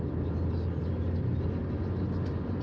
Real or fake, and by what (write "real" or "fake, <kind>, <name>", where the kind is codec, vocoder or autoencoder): real